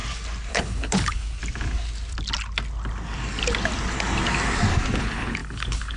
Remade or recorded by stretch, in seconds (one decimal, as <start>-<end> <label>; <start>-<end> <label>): 0.0-0.5 recorded; 0.5-1.4 remade; 1.4-5.0 recorded; 5.0-6.0 remade